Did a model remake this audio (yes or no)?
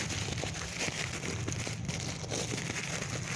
no